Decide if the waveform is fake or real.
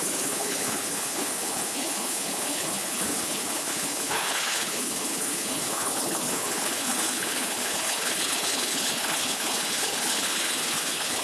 fake